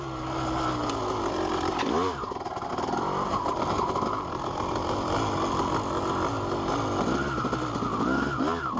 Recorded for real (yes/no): yes